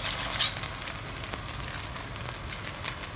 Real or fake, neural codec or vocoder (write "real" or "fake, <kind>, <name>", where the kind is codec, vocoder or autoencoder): real